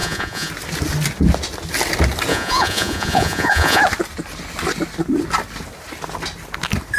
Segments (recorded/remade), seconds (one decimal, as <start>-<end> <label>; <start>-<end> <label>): 0.0-0.5 remade; 0.5-2.3 recorded; 2.3-3.8 remade; 3.8-7.0 recorded